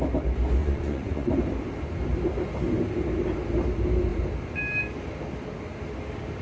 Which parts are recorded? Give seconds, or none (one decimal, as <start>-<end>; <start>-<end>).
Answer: 0.0-0.6; 1.3-6.4

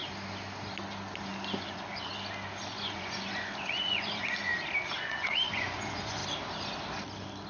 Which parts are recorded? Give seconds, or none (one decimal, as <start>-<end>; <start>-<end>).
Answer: 0.0-1.6; 2.1-2.7; 4.5-5.0; 6.2-7.5

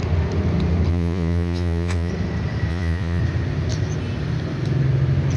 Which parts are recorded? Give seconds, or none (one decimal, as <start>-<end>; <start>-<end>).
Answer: 0.0-0.9; 2.1-2.7; 3.2-5.4

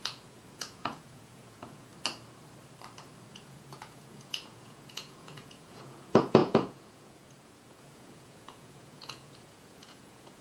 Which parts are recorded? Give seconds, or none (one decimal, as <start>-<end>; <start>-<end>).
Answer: 1.9-3.3

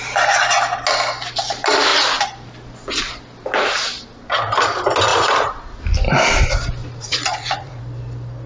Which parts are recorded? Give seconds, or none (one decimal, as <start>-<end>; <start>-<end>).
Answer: 0.0-5.1; 5.8-6.8; 7.8-8.5

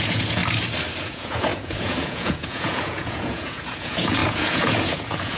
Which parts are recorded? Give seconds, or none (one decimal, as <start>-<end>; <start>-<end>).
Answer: 0.4-1.0